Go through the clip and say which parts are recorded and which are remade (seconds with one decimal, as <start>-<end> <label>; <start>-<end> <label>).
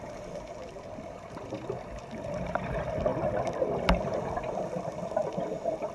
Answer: 0.0-1.6 remade; 1.6-2.7 recorded; 2.7-5.9 remade